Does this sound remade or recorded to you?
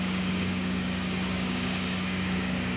remade